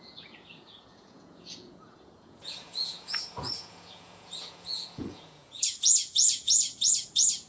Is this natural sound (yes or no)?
no